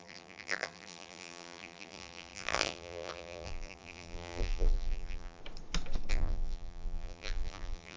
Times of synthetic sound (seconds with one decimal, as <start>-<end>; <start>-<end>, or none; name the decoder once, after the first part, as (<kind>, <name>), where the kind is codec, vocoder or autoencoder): 0.0-5.4 (vocoder, BigVGAN v2); 6.1-8.0